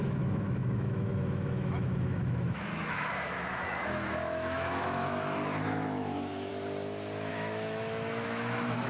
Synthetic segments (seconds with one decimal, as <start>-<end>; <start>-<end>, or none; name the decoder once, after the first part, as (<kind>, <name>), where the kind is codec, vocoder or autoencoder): 0.0-6.5 (autoencoder, DAC-VAE); 7.3-8.9